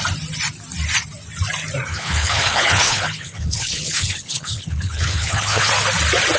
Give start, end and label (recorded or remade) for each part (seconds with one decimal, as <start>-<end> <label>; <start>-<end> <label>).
0.0-1.9 recorded; 1.9-5.7 remade; 5.7-6.4 recorded